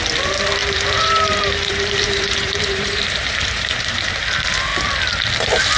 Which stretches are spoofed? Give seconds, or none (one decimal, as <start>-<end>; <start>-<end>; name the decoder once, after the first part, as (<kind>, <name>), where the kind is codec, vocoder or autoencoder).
0.6-4.1 (vocoder, BigVGAN v2)